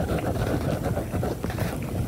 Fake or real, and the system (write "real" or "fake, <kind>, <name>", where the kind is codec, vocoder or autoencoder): fake, vocoder, BigVGAN v2